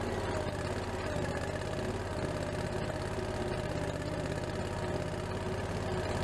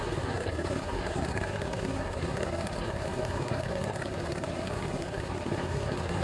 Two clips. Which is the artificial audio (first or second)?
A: second